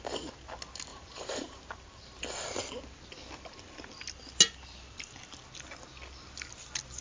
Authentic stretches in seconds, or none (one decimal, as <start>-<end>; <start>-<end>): 0.0-0.9; 1.8-7.0